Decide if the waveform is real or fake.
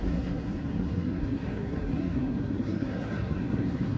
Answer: fake